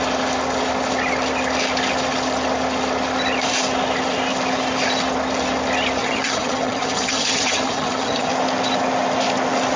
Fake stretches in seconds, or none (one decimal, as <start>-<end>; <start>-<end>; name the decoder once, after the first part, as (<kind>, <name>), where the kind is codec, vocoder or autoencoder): 6.0-8.3 (vocoder, HiFi-GAN)